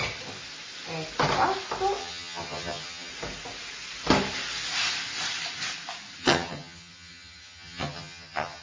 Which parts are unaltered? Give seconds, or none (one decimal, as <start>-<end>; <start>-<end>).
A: 0.0-2.0; 3.1-6.2